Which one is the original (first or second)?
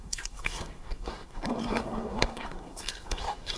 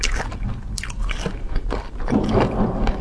second